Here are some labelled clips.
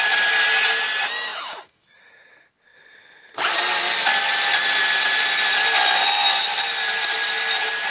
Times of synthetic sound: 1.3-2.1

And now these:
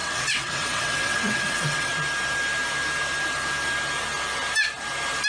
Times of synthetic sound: 0.0-1.9

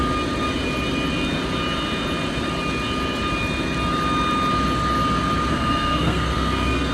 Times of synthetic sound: 5.5-6.9

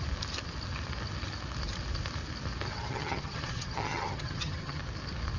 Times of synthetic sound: 2.7-4.8

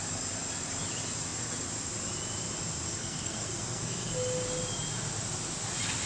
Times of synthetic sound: 3.0-4.1

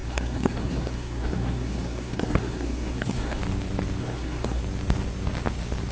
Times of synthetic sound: 0.0-3.4; 4.0-4.6

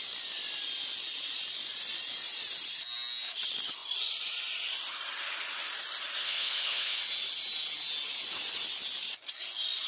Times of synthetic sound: 6.2-7.0

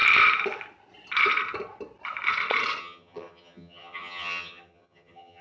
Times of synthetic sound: 2.8-5.4